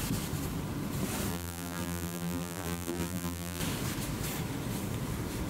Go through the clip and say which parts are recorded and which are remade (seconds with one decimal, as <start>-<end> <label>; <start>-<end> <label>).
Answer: 0.0-1.3 recorded; 1.3-3.6 remade; 3.6-5.5 recorded